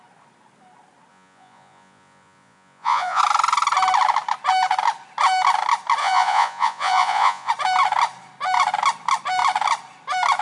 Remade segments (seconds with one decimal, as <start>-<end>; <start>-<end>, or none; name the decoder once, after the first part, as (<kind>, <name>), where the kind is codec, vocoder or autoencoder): 1.1-3.2 (vocoder, Vocos); 6.0-7.5